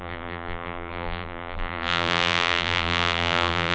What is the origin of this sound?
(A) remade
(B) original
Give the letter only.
A